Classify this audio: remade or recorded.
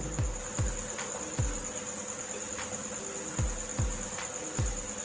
recorded